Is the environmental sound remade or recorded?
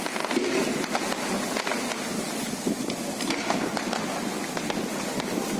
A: recorded